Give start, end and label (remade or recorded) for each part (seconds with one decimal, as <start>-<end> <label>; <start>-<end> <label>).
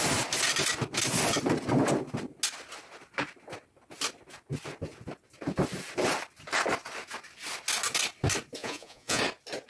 0.0-8.6 recorded; 8.6-9.2 remade; 9.2-9.7 recorded